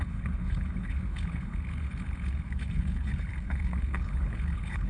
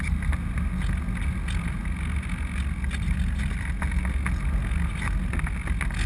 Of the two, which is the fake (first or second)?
first